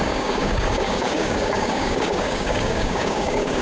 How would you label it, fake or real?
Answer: fake